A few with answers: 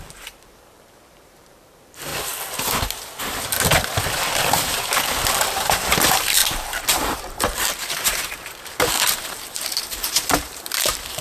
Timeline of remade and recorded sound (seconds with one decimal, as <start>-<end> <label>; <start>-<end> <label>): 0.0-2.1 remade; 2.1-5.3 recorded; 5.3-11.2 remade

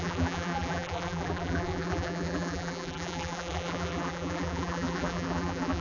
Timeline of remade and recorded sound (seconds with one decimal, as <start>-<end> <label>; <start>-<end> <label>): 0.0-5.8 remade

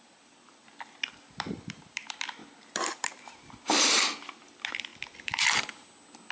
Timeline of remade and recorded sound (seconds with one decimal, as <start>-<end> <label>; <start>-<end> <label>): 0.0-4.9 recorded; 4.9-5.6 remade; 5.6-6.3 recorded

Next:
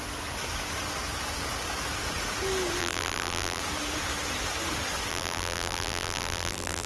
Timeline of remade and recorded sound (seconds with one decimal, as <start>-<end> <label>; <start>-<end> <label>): 0.0-2.8 recorded; 2.8-3.6 remade; 3.6-5.1 recorded; 5.1-6.9 remade

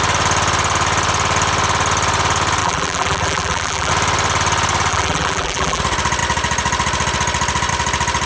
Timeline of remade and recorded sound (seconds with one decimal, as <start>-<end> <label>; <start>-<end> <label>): 0.0-2.6 recorded; 2.6-3.9 remade; 3.9-4.9 recorded; 4.9-5.8 remade; 5.8-8.3 recorded

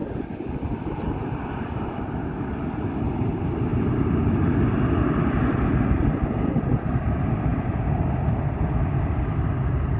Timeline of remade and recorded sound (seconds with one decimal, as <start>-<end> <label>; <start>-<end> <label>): 0.0-1.7 recorded; 1.7-3.7 remade; 3.7-6.5 recorded; 6.5-7.5 remade; 7.5-8.8 recorded; 8.8-10.0 remade